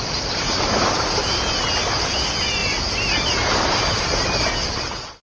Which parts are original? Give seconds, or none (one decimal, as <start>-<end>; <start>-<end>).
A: 0.0-5.4